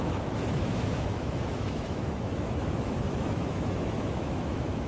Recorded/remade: remade